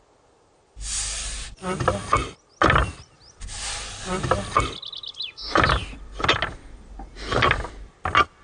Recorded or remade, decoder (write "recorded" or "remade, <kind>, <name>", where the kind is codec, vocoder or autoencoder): recorded